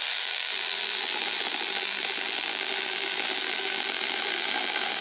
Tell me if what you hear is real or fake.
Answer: fake